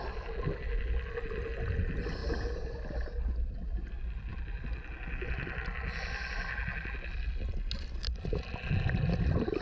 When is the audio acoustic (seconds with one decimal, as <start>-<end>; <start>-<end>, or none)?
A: 0.0-9.6